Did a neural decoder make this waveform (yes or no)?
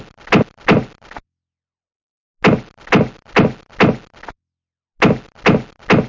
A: no